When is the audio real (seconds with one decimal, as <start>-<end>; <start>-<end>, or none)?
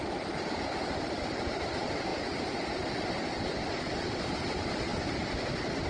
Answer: 0.0-4.9; 5.5-5.9